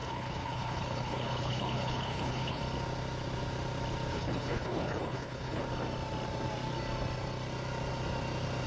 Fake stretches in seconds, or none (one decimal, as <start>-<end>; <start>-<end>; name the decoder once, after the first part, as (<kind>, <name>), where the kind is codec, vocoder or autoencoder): 0.0-2.6 (codec, HILCodec); 4.1-5.6